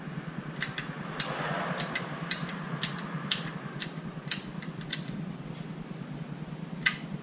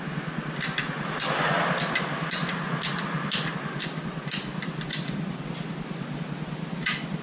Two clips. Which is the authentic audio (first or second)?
second